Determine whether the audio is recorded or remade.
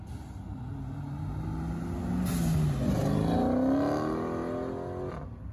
recorded